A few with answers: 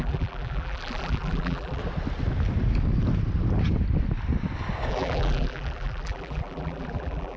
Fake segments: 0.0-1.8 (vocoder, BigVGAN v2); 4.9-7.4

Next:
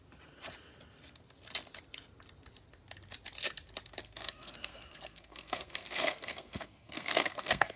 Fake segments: 4.0-7.8 (codec, SNAC)

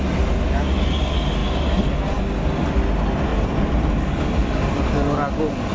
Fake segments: 3.3-4.8 (vocoder, BigVGAN v2)

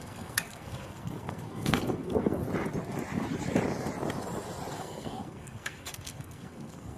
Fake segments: 0.0-2.4 (codec, SNAC); 4.7-7.0